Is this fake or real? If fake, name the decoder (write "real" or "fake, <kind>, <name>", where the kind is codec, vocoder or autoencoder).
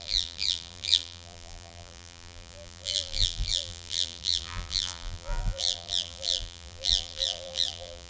fake, vocoder, BigVGAN v2